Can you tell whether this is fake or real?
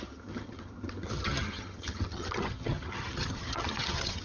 fake